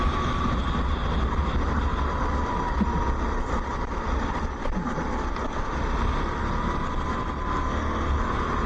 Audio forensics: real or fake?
real